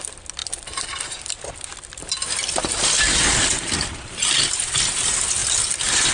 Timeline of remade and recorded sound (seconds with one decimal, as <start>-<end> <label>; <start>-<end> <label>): 0.0-6.1 recorded